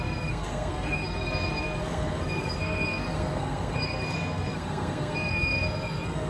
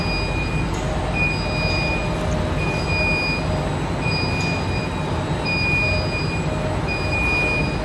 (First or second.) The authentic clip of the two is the second